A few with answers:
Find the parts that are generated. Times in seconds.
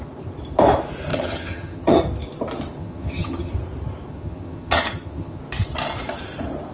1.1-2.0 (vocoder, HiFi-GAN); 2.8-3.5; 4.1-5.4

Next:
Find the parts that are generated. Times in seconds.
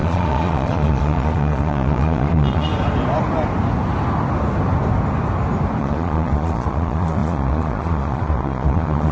0.0-2.7 (vocoder, Vocos); 5.8-9.1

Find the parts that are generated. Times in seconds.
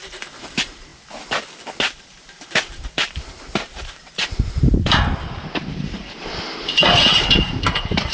0.0-0.9 (vocoder, BigVGAN v2); 2.0-8.1